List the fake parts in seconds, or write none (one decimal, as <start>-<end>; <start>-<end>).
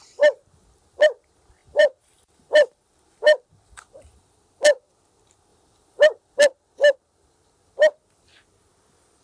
1.6-4.5; 5.5-6.4